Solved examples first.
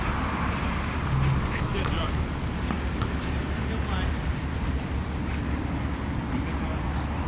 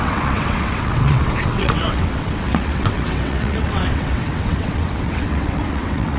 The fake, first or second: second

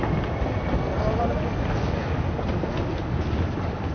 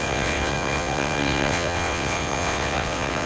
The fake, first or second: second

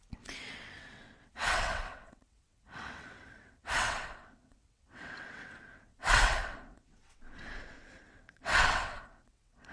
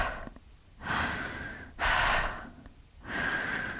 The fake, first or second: first